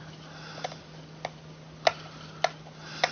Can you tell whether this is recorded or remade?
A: recorded